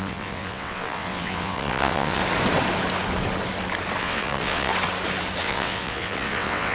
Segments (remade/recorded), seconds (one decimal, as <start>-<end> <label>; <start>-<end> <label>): 0.0-2.2 remade; 2.2-4.0 recorded; 4.0-4.7 remade; 4.7-5.4 recorded; 5.4-6.7 remade